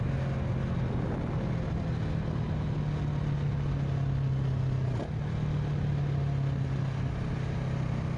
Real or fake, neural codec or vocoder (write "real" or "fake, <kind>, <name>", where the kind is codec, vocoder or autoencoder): real